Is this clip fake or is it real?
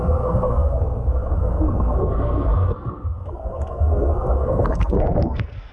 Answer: fake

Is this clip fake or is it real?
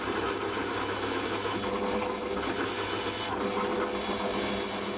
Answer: real